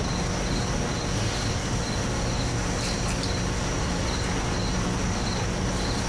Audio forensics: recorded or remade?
recorded